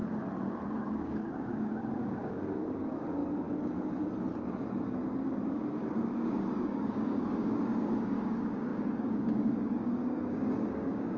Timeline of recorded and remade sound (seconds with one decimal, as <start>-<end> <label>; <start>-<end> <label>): 0.0-0.9 recorded; 0.9-3.2 remade; 3.2-5.5 recorded; 5.5-11.2 remade